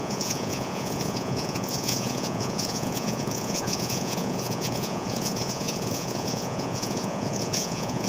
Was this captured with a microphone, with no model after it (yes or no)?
no